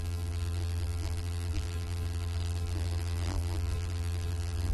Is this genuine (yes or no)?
no